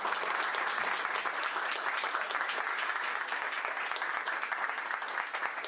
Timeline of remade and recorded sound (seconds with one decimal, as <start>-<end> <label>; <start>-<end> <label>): 0.0-2.7 recorded; 2.7-3.6 remade; 3.6-5.7 recorded